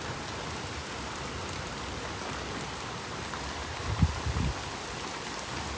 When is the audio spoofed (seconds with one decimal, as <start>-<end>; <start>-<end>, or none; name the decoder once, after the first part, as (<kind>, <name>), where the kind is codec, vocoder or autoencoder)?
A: none